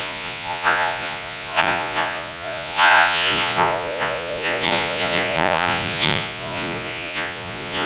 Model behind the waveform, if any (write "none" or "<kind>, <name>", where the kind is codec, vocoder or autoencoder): vocoder, Vocos